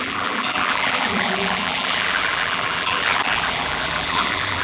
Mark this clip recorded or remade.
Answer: remade